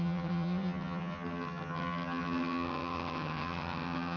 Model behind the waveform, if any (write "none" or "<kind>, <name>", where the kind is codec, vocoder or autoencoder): vocoder, HiFi-GAN